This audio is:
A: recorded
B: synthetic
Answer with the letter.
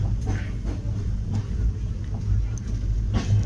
A